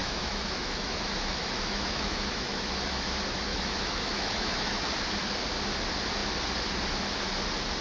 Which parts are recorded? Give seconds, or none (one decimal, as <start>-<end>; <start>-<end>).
2.9-3.5; 4.9-7.8